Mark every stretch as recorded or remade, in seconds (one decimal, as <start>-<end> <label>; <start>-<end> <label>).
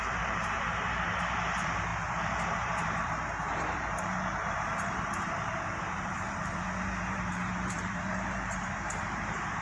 0.0-9.6 remade